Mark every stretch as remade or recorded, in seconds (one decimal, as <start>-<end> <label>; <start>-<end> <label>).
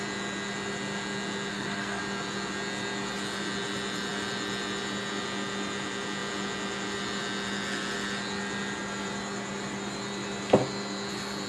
0.0-1.5 recorded; 1.5-2.0 remade; 2.0-11.5 recorded